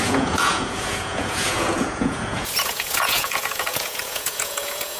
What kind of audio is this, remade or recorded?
remade